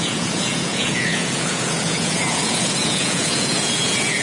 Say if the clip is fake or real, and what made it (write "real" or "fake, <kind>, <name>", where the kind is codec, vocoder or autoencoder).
fake, vocoder, Vocos